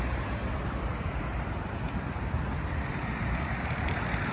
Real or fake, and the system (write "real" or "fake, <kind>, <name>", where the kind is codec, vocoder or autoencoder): fake, vocoder, BigVGAN v2